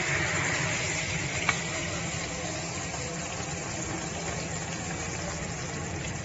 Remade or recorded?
recorded